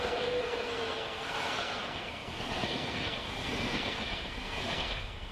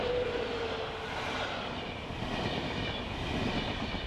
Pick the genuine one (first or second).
second